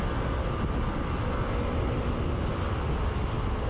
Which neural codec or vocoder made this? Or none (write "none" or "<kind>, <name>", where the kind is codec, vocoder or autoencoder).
none